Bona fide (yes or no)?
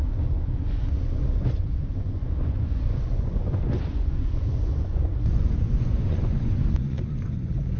no